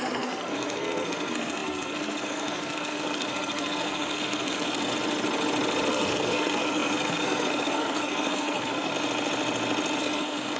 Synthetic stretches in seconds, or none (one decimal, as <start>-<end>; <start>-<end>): 0.0-4.9; 5.9-8.9; 10.0-10.6